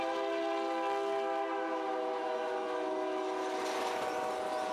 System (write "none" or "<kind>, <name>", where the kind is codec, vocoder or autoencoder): none